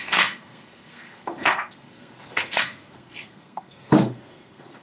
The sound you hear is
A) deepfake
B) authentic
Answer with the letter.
A